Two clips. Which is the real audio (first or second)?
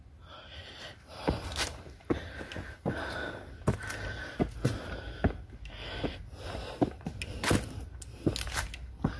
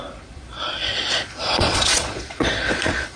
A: first